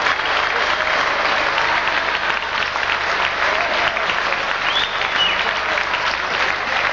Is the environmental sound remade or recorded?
recorded